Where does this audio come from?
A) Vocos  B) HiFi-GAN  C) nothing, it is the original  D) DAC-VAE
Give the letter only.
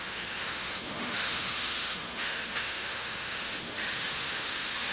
D